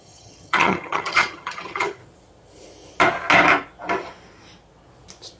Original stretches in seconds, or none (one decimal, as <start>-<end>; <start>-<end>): 2.0-5.4